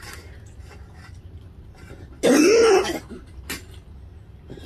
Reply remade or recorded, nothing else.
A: recorded